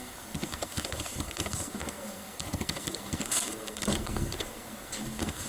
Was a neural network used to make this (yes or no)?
yes